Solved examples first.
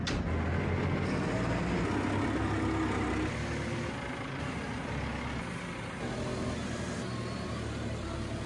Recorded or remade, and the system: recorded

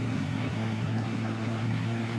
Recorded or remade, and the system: remade, codec, SNAC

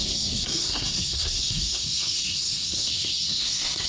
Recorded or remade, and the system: remade, codec, SNAC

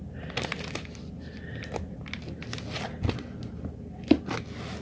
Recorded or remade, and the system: recorded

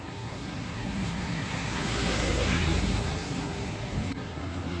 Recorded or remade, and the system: remade, codec, SNAC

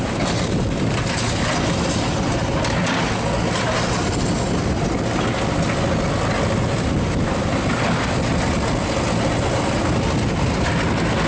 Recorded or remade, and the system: recorded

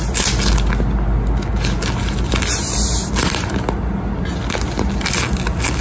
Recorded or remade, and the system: recorded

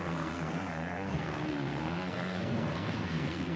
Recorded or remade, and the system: remade, codec, SNAC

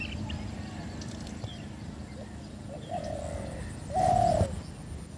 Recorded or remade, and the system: recorded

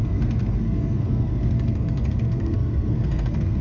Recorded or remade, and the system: remade, codec, SNAC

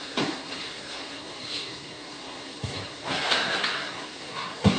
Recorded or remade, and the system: remade, codec, SNAC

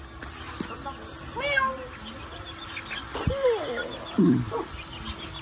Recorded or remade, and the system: recorded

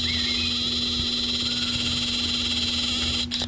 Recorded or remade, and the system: recorded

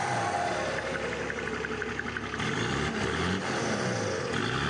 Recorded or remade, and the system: recorded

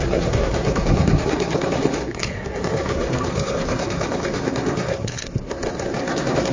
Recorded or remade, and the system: remade, codec, SNAC